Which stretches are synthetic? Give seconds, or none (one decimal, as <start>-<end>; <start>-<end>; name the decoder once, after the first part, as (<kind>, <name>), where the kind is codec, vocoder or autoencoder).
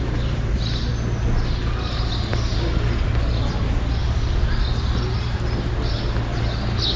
none